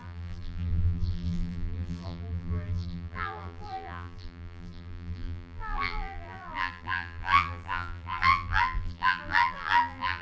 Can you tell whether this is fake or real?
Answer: fake